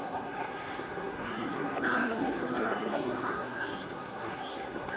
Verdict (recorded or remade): remade